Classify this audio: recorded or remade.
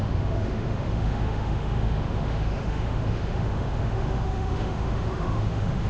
remade